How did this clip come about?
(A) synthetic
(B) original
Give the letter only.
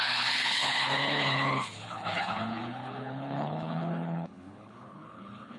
A